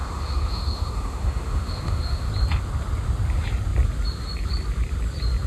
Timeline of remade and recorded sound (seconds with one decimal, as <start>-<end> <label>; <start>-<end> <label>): 0.0-2.3 remade; 2.3-5.5 recorded